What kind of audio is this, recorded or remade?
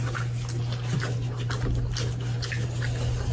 recorded